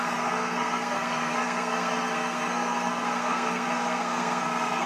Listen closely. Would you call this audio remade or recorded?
remade